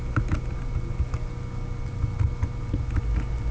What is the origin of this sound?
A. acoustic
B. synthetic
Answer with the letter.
A